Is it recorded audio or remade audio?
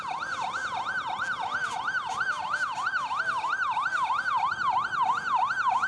recorded